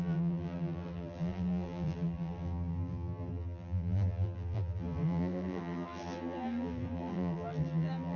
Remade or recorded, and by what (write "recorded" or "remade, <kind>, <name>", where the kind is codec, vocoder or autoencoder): remade, vocoder, BigVGAN v2